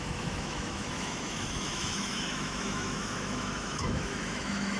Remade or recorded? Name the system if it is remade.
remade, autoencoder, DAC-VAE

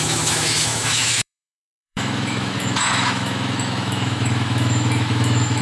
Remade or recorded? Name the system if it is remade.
remade, autoencoder, DAC-VAE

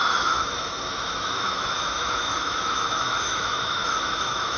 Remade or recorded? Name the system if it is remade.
remade, autoencoder, DAC-VAE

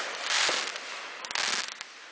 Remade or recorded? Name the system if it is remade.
recorded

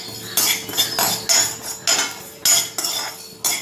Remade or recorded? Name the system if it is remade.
recorded